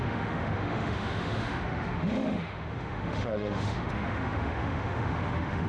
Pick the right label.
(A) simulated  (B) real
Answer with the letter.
A